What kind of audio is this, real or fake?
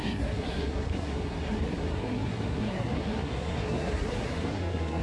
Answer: fake